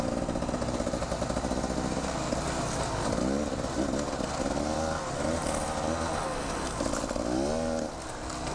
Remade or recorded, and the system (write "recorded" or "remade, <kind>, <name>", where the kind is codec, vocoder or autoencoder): recorded